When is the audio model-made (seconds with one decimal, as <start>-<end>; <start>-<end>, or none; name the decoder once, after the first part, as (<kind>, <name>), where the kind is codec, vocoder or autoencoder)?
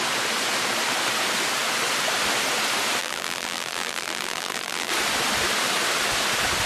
3.0-4.9 (vocoder, BigVGAN v2)